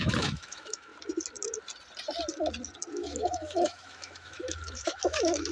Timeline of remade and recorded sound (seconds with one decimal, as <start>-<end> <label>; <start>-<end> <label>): 0.0-0.9 remade; 0.9-2.9 recorded; 2.9-5.5 remade